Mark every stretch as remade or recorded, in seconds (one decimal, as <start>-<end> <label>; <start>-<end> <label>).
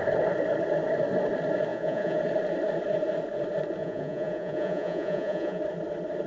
0.0-1.7 recorded; 1.7-2.2 remade; 2.2-3.8 recorded; 3.8-5.6 remade; 5.6-6.3 recorded